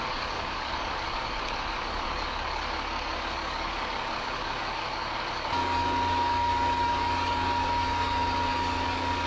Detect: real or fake fake